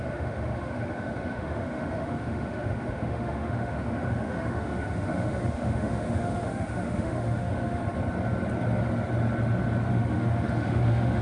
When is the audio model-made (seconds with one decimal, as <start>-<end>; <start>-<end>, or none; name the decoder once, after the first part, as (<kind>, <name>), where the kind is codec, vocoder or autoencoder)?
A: 0.0-7.8 (autoencoder, DAC-VAE); 9.9-11.2